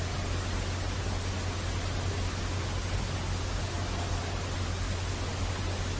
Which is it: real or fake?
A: real